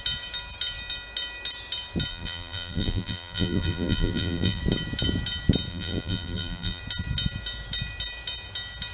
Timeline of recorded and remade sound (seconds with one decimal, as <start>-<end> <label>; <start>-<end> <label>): 0.0-2.1 recorded; 2.1-4.6 remade; 4.6-5.7 recorded; 5.7-6.8 remade; 6.8-8.9 recorded